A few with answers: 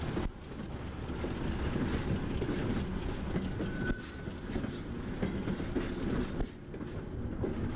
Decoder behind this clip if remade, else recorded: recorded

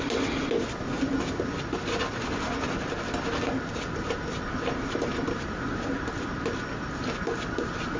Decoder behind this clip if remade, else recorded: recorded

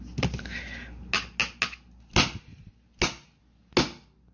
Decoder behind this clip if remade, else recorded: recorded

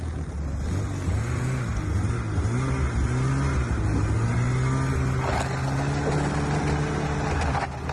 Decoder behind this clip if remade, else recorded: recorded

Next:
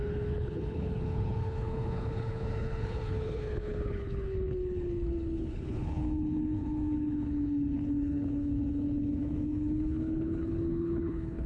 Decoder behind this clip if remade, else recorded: remade, codec, HILCodec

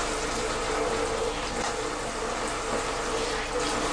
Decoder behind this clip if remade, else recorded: recorded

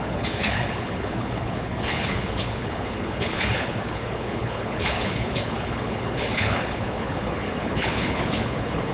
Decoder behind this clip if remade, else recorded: remade, codec, HILCodec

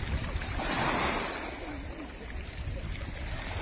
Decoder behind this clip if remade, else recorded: recorded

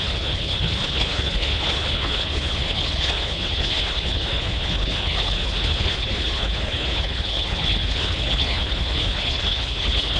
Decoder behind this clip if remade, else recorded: remade, codec, HILCodec